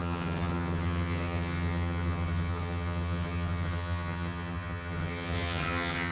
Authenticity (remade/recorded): remade